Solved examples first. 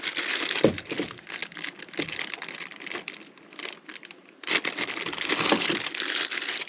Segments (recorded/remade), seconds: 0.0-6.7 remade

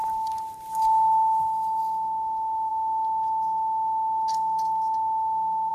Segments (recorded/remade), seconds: 0.0-5.7 recorded

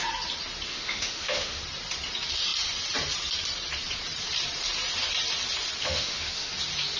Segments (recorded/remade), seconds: 0.0-0.7 recorded; 0.7-1.6 remade; 1.6-5.8 recorded; 5.8-6.5 remade; 6.5-7.0 recorded

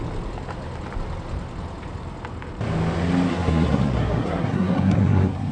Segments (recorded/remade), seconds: 0.0-3.3 recorded; 3.3-5.5 remade

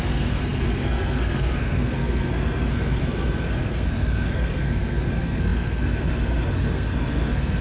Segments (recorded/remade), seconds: 0.0-7.6 remade